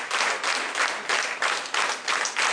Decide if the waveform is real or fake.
real